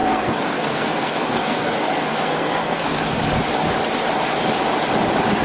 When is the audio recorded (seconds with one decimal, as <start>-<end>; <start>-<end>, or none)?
3.2-5.4